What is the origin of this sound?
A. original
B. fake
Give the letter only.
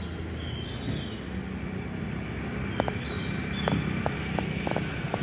A